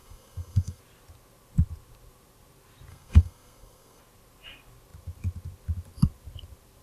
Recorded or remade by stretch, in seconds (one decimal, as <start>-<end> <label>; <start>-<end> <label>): 0.0-0.8 remade; 0.8-2.9 recorded; 2.9-4.0 remade; 4.0-6.8 recorded